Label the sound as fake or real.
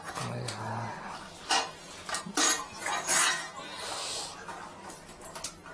real